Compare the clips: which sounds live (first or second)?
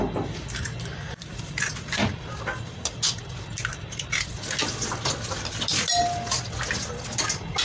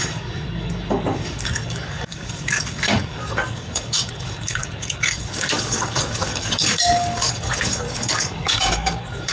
first